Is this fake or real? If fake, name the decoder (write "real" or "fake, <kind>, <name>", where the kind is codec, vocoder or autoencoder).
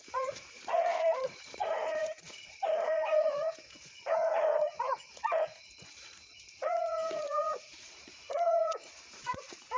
fake, vocoder, Vocos